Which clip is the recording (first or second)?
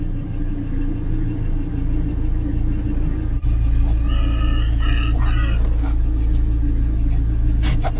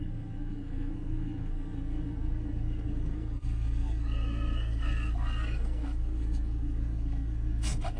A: first